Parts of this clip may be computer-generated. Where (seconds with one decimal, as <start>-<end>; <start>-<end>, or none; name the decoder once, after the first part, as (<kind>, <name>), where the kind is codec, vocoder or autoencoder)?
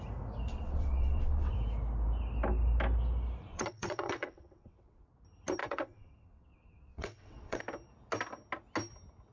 0.5-1.5 (vocoder, WaveNeXt); 3.5-5.1; 5.6-7.6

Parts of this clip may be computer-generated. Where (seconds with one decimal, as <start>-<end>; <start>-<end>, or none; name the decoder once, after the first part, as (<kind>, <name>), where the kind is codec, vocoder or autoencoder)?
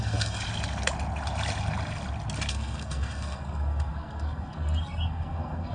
0.0-0.4 (codec, SNAC); 2.5-5.7